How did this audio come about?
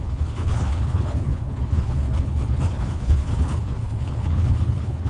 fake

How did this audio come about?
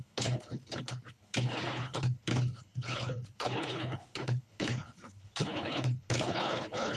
fake